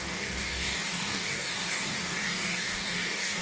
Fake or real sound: fake